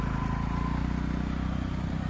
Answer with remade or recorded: recorded